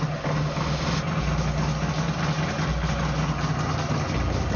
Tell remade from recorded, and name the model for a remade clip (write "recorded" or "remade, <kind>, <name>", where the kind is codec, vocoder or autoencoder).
recorded